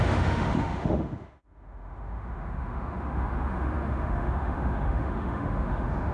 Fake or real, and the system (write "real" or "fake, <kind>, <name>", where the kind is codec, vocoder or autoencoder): fake, autoencoder, DAC-VAE